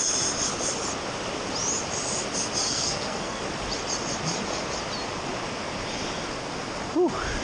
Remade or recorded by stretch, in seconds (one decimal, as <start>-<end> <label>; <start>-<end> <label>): 0.0-2.7 recorded; 2.7-3.4 remade; 3.4-7.4 recorded